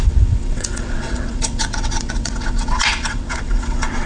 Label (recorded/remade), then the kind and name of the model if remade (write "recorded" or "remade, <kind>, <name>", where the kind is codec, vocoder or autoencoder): remade, vocoder, WaveNeXt